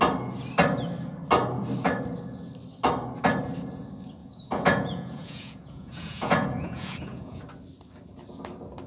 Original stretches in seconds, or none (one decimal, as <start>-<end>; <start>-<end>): 0.0-4.2; 7.4-8.9